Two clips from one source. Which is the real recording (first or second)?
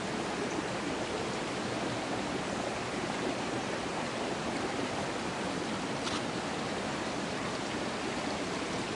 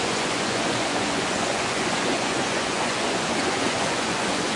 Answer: first